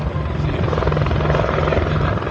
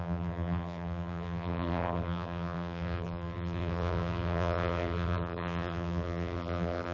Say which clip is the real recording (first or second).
first